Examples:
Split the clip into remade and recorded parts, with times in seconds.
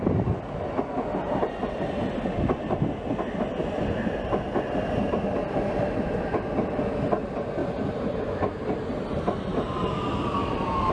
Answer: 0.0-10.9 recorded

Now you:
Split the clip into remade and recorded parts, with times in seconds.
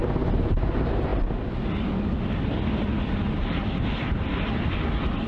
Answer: 0.0-5.3 recorded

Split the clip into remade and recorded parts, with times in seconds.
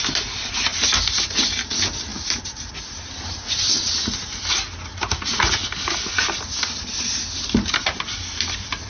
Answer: 0.0-8.9 recorded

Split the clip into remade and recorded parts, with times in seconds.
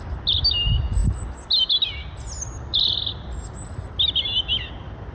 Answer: 0.0-5.1 recorded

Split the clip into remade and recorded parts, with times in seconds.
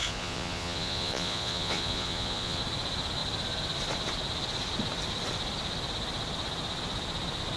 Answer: 0.0-2.6 remade; 2.6-7.6 recorded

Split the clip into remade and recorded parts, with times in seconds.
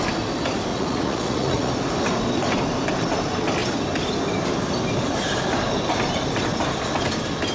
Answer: 0.0-0.7 recorded; 0.7-1.7 remade; 1.7-7.5 recorded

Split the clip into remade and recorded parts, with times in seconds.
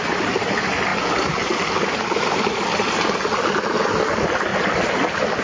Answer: 0.0-5.4 recorded